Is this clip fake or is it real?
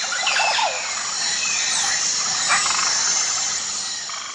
real